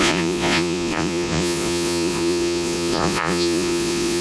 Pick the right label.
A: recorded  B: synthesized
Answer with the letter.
B